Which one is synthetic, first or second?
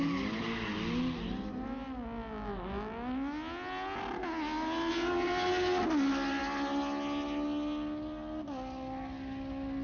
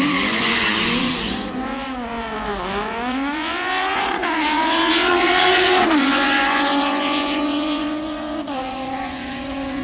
second